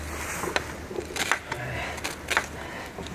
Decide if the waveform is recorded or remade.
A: recorded